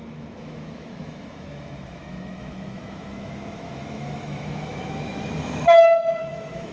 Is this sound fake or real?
fake